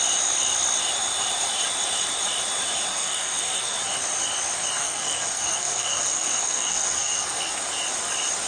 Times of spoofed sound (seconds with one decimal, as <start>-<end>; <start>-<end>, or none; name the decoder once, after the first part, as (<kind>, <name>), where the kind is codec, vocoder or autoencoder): 2.9-3.7 (codec, SNAC); 4.8-7.5